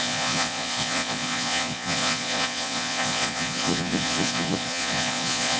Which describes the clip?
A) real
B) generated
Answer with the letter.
B